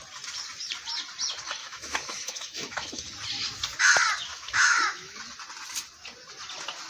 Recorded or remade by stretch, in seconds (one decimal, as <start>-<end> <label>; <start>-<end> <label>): 0.0-1.6 recorded; 1.6-3.0 remade; 3.0-4.3 recorded; 4.3-5.2 remade; 5.2-6.9 recorded